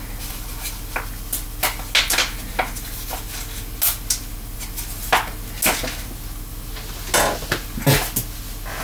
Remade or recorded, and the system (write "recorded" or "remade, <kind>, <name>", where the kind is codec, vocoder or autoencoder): recorded